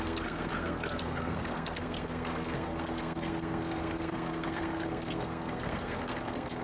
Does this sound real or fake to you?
fake